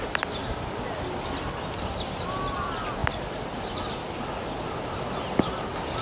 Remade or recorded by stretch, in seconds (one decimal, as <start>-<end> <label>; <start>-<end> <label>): 0.0-6.0 recorded